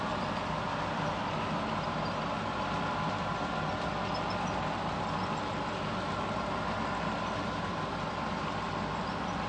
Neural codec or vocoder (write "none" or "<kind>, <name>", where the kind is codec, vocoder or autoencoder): none